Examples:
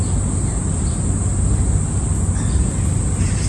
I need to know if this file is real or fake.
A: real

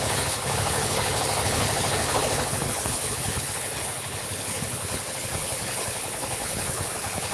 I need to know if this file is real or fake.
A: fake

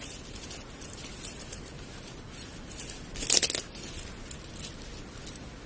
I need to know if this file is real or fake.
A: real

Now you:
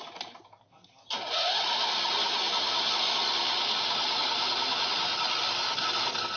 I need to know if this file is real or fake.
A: real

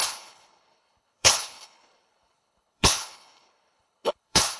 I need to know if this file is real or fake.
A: fake